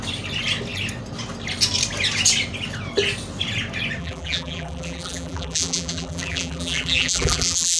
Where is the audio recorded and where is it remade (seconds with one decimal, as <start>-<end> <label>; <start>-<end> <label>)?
0.0-4.0 recorded; 4.0-7.8 remade